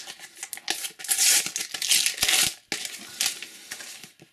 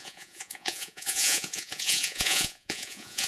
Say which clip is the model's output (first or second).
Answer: second